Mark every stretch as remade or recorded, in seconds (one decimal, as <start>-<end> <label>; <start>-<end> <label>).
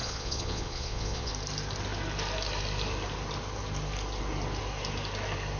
0.0-1.3 remade; 1.3-5.6 recorded